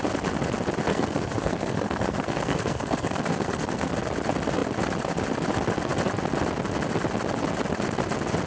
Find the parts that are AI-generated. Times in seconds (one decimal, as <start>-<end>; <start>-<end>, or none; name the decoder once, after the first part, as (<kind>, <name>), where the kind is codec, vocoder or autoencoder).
0.9-3.9 (codec, SNAC)